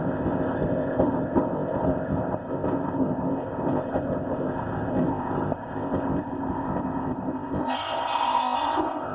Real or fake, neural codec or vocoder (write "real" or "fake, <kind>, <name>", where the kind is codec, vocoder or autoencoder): fake, codec, ZipCodec